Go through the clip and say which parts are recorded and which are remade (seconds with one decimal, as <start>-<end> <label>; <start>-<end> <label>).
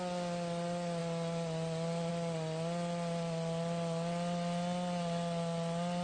0.0-6.0 recorded